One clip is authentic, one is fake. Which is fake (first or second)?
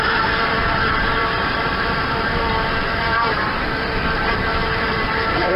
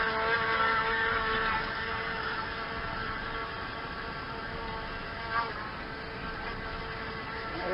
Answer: first